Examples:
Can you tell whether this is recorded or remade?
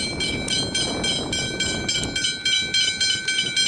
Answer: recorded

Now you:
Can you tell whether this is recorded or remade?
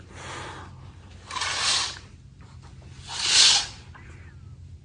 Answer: recorded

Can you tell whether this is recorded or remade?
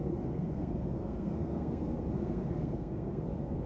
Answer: remade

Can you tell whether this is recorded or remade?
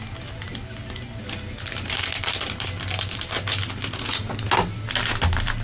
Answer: recorded